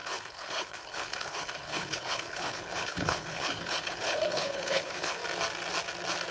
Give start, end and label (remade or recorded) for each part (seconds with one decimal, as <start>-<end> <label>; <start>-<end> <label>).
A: 0.0-5.2 remade; 5.2-6.3 recorded